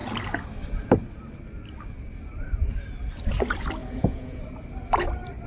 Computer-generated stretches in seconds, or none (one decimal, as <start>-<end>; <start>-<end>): 3.8-4.4